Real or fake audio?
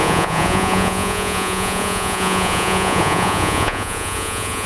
fake